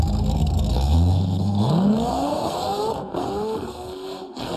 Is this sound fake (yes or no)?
yes